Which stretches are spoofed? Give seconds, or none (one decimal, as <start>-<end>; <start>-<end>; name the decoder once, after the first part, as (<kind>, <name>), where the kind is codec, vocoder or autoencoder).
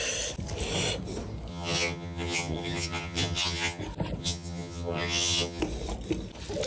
1.5-3.8 (vocoder, HiFi-GAN); 4.2-5.6